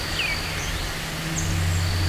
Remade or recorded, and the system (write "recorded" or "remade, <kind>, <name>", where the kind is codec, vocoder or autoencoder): recorded